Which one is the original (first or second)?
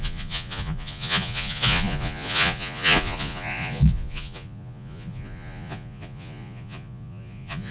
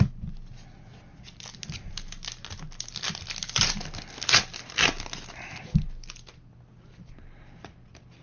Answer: second